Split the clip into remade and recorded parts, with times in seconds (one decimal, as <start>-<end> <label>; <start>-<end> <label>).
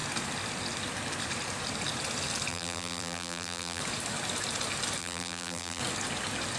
0.0-2.5 recorded; 2.5-3.8 remade; 3.8-5.0 recorded; 5.0-5.8 remade; 5.8-6.6 recorded